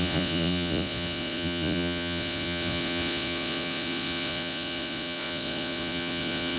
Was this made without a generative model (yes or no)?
no